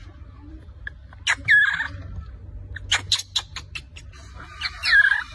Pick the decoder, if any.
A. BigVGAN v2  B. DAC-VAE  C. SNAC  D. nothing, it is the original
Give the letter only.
D